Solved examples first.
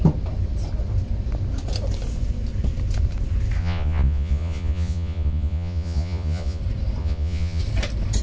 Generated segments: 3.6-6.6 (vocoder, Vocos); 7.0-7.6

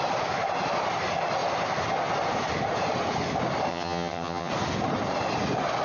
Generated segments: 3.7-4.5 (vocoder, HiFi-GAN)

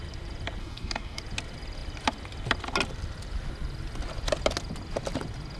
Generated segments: 0.6-1.2 (codec, DAC)

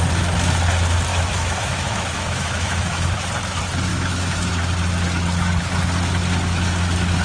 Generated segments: 1.1-3.1 (autoencoder, DAC-VAE); 3.9-4.5